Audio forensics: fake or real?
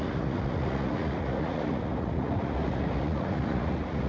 fake